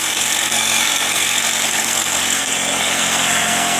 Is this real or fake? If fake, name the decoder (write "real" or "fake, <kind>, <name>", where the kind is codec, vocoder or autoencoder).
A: fake, codec, SNAC